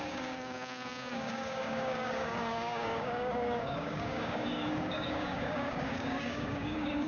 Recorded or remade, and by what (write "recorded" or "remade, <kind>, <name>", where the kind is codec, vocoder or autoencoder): remade, codec, DAC